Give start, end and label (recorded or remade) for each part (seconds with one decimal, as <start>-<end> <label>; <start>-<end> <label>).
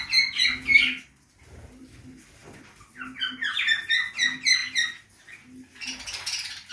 0.0-6.7 recorded